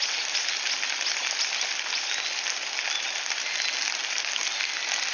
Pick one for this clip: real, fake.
real